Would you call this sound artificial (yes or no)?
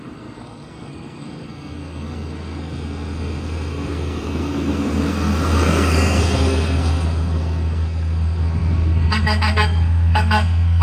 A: yes